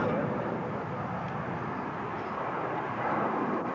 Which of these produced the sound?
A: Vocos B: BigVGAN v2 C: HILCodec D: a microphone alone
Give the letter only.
D